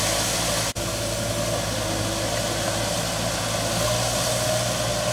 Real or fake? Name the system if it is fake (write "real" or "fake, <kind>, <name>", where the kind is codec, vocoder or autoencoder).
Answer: real